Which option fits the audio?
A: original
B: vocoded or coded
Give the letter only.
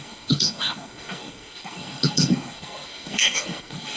B